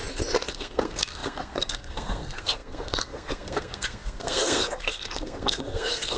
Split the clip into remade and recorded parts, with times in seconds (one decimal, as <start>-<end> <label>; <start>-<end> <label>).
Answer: 0.0-0.5 recorded; 0.5-6.2 remade